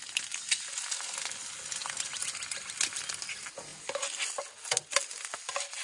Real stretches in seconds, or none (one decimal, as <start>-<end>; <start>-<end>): 0.0-5.8